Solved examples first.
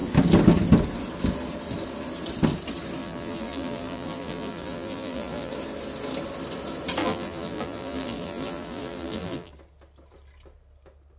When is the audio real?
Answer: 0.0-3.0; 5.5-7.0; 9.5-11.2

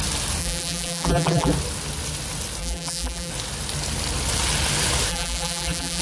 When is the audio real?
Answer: 0.0-0.4; 1.5-2.6; 3.3-5.1

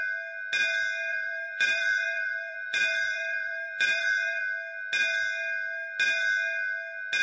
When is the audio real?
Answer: 0.0-1.1; 4.4-7.2